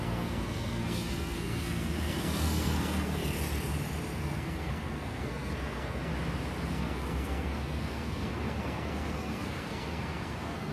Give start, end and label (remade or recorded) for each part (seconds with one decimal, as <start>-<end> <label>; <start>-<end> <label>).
0.0-3.2 remade; 3.2-4.2 recorded; 4.2-6.1 remade; 6.1-6.7 recorded; 6.7-10.7 remade